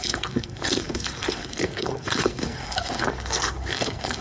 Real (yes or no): no